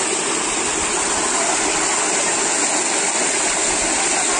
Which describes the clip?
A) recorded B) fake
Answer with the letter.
A